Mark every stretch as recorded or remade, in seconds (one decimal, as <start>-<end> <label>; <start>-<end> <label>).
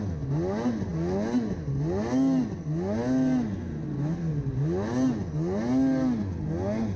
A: 0.0-7.0 recorded